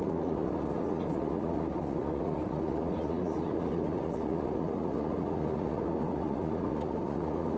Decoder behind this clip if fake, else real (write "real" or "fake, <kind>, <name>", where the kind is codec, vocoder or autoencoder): fake, vocoder, Vocos